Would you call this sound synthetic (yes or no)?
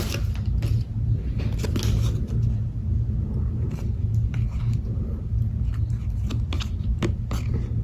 no